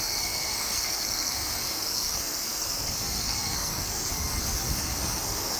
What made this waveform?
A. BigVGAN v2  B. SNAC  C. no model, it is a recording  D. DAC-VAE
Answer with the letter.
B